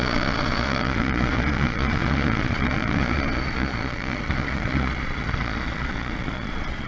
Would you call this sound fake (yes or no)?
yes